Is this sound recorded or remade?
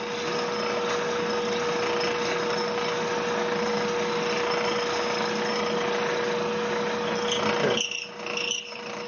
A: recorded